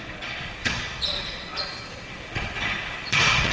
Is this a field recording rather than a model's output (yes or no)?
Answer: no